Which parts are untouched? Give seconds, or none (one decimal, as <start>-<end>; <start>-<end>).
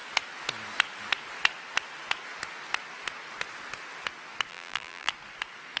0.0-4.5; 5.1-5.8